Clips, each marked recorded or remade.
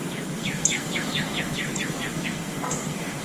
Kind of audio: remade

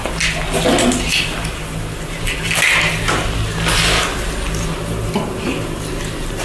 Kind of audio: recorded